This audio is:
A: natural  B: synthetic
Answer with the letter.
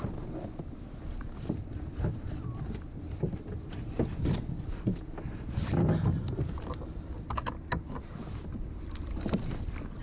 A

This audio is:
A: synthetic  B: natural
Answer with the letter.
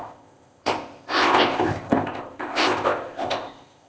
A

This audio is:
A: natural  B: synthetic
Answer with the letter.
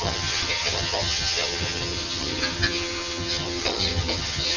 B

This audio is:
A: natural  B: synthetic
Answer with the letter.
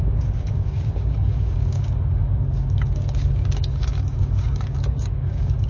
B